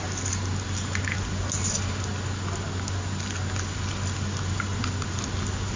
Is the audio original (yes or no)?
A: yes